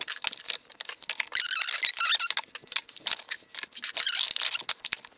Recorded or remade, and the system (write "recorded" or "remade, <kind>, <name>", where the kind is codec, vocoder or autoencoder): recorded